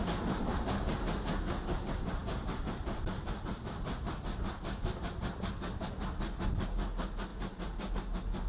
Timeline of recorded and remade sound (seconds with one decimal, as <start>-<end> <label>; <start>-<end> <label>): 0.0-2.2 recorded; 2.2-4.3 remade; 4.3-7.3 recorded; 7.3-7.9 remade; 7.9-8.5 recorded